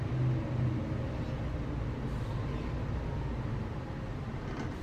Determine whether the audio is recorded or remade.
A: recorded